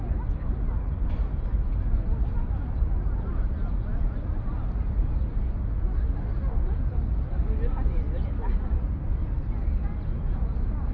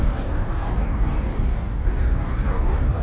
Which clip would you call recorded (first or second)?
first